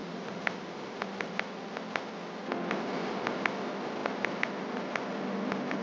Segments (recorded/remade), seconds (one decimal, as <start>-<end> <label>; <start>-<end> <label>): 0.0-5.8 recorded